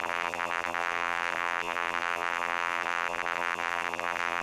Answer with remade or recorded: remade